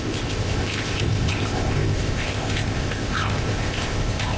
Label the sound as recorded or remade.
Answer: remade